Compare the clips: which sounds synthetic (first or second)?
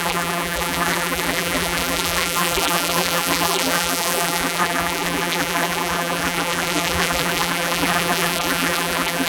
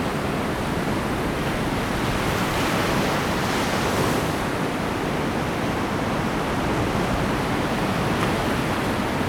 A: first